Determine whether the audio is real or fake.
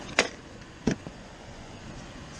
fake